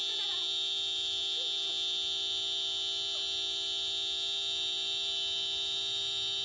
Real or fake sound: real